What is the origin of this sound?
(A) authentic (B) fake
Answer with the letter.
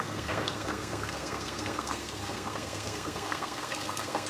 B